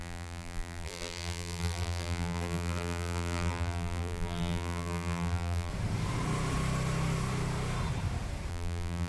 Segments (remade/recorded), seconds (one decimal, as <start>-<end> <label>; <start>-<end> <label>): 0.0-5.7 remade; 5.7-8.5 recorded; 8.5-9.1 remade